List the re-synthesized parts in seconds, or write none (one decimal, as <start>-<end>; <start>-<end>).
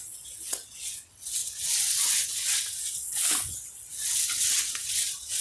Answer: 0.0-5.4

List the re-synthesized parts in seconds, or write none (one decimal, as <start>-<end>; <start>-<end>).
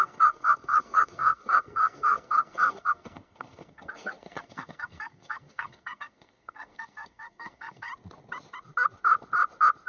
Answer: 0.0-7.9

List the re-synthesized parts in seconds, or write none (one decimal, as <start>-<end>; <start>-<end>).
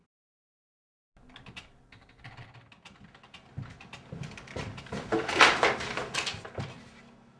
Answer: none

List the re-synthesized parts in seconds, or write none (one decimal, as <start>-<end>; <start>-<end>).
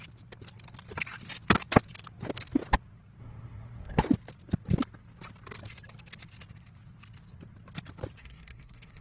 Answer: 3.2-4.0; 8.2-9.0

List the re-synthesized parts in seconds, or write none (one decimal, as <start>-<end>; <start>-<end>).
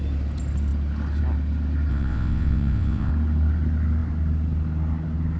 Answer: 1.9-3.1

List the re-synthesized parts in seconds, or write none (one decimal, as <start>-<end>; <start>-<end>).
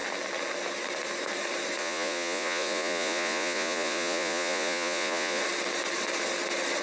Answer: 1.8-5.4